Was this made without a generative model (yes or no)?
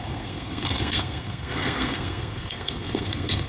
no